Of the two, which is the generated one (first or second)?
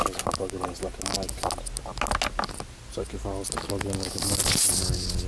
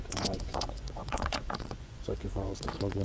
second